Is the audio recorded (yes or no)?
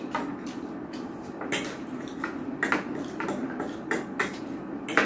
yes